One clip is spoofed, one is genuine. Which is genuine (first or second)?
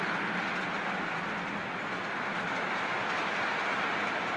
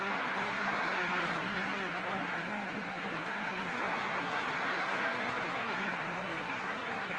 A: first